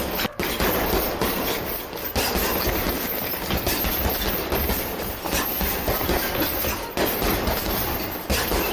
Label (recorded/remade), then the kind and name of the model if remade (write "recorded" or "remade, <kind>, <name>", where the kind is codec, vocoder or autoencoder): recorded